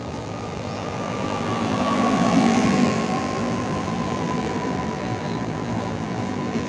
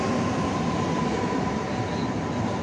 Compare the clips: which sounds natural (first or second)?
second